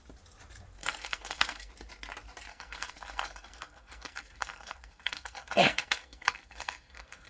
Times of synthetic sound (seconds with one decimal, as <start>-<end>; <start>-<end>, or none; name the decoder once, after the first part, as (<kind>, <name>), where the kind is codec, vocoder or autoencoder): 0.8-1.7 (codec, SNAC); 2.5-7.3